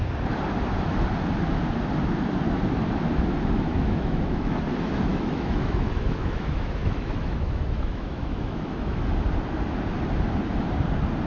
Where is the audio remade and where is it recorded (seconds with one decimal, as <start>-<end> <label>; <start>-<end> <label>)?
0.0-3.7 recorded; 3.7-4.6 remade; 4.6-5.1 recorded; 5.1-9.0 remade; 9.0-11.3 recorded